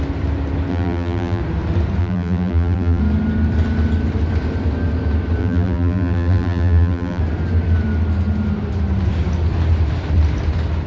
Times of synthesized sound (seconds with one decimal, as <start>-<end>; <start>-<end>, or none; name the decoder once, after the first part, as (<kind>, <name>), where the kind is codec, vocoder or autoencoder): 0.7-1.4 (vocoder, BigVGAN v2); 2.0-3.0; 5.4-7.2